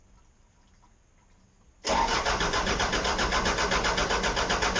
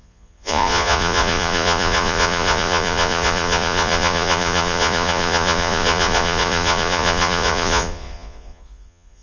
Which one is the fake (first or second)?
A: second